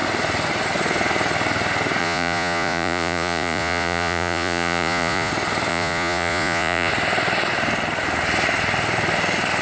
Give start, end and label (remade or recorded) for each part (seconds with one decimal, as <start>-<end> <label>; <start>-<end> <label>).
0.0-2.0 recorded; 2.0-5.3 remade; 5.3-5.7 recorded; 5.7-6.9 remade; 6.9-9.6 recorded